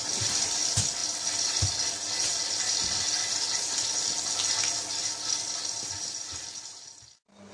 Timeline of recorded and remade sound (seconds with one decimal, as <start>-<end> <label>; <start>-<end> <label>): 0.0-7.5 recorded